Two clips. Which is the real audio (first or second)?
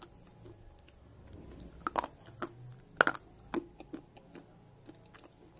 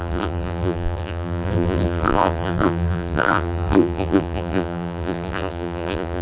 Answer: first